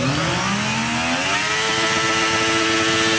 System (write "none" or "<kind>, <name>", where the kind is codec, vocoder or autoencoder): none